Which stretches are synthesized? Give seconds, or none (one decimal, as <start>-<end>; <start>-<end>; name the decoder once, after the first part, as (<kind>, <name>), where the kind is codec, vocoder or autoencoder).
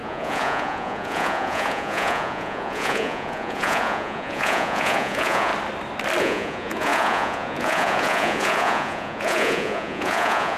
0.0-5.5 (vocoder, Vocos); 6.2-10.6